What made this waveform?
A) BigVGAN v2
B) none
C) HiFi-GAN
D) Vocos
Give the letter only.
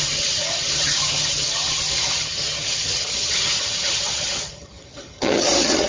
C